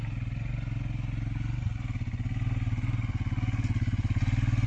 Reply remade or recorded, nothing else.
recorded